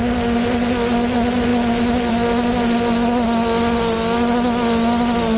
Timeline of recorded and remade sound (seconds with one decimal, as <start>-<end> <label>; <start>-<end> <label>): 0.0-5.4 recorded